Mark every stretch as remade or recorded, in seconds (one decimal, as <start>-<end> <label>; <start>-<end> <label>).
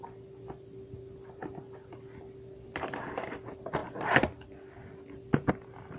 0.0-6.0 recorded